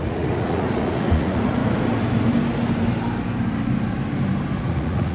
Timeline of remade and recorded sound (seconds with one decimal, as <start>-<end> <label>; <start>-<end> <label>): 0.0-1.6 remade; 1.6-4.6 recorded; 4.6-5.1 remade